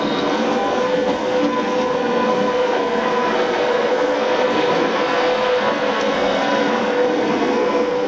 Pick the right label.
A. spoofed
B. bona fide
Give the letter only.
A